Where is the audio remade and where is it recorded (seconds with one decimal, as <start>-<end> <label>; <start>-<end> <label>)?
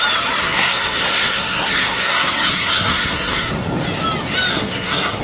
0.0-0.4 recorded; 0.4-3.5 remade; 3.5-4.5 recorded; 4.5-5.2 remade